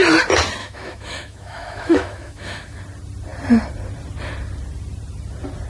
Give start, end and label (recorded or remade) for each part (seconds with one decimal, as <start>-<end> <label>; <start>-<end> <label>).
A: 0.0-0.6 recorded; 0.6-2.8 remade; 2.8-5.7 recorded